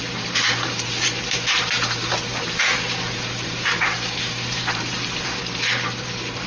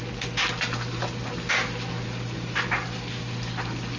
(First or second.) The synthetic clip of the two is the first